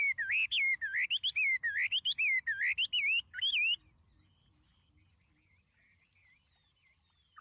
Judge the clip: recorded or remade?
recorded